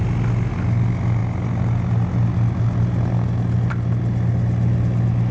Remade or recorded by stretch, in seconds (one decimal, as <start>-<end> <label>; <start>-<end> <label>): 0.0-5.3 recorded